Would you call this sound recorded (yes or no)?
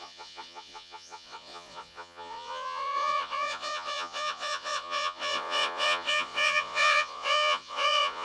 no